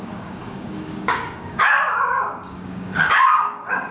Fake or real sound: fake